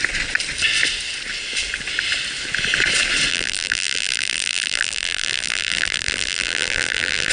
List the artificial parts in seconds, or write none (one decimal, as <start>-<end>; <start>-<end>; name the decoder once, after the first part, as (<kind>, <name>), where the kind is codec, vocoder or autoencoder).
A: 3.3-7.3 (vocoder, BigVGAN v2)